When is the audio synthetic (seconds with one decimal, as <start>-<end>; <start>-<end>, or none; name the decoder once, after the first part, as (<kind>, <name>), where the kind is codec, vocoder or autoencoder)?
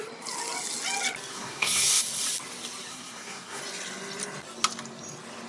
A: 1.3-2.0 (codec, SNAC); 2.9-3.6